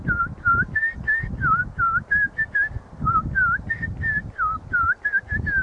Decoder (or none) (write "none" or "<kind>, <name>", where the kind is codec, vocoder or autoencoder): none